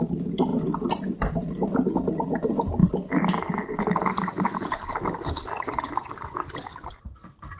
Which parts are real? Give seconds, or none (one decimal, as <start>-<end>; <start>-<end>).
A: 0.0-7.6